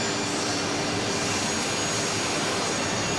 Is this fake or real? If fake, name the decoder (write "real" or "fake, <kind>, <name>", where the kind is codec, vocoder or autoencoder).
real